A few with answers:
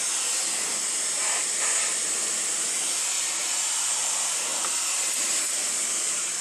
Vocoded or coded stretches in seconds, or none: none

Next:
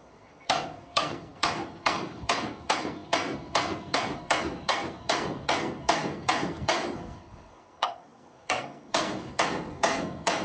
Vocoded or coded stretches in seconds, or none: 0.0-10.4

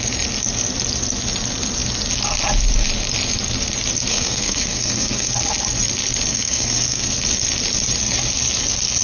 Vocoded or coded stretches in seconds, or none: 4.1-5.3; 6.3-7.0